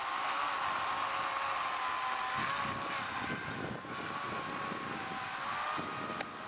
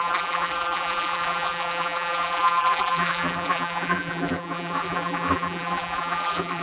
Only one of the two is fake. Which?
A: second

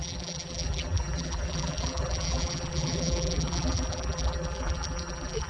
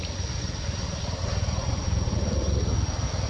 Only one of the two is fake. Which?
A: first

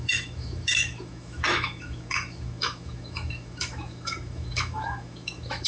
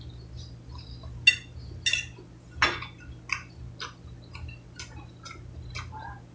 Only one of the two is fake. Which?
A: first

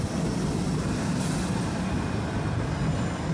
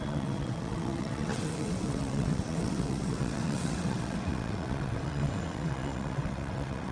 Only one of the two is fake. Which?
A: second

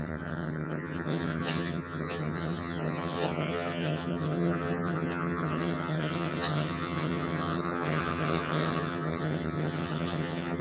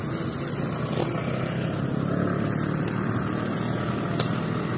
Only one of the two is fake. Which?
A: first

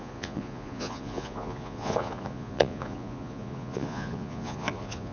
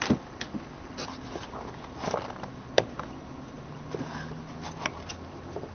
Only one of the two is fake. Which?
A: first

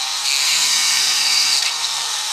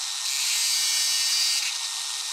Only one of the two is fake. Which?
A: first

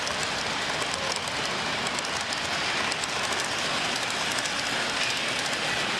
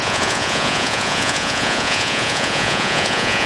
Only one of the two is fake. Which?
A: second